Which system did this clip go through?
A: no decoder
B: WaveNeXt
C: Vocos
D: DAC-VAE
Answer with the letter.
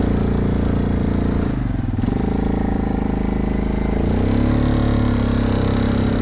A